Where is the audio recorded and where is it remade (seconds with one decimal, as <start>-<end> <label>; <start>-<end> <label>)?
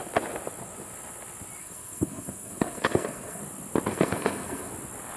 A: 0.0-1.6 recorded; 1.6-3.4 remade; 3.4-3.9 recorded; 3.9-4.7 remade; 4.7-5.2 recorded